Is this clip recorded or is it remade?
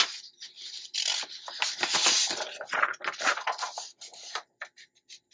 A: recorded